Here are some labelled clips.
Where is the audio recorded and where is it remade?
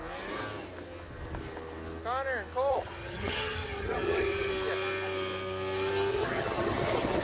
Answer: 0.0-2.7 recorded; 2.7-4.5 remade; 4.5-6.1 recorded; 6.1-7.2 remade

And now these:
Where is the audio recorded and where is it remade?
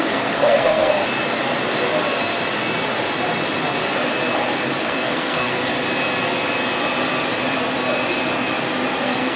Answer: 0.0-1.0 remade; 1.0-4.8 recorded; 4.8-5.7 remade; 5.7-9.0 recorded; 9.0-9.4 remade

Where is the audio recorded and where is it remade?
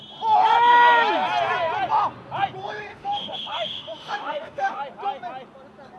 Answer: 0.0-2.9 recorded; 2.9-4.8 remade; 4.8-6.0 recorded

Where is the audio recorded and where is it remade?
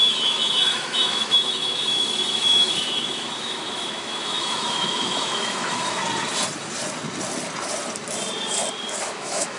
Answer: 0.0-6.0 remade; 6.0-9.0 recorded; 9.0-9.6 remade